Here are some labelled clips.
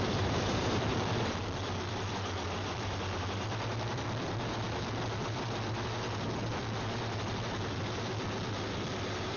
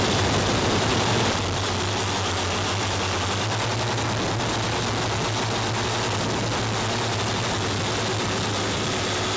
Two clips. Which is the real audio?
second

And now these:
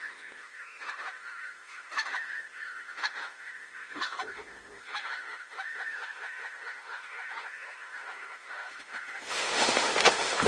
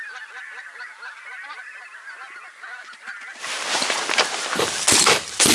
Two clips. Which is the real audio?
second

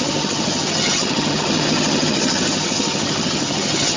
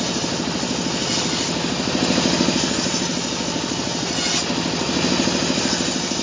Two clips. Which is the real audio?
second